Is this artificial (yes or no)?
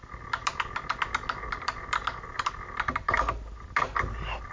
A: no